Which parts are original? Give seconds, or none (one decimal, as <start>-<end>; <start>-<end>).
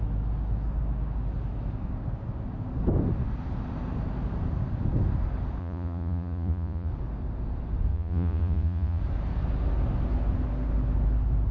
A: 0.0-5.6; 6.9-7.9; 9.0-11.5